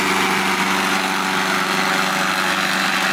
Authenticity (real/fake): real